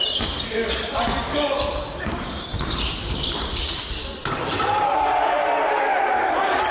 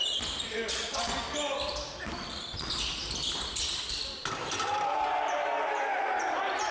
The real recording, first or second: second